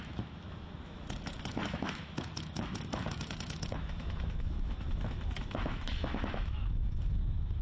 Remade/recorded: remade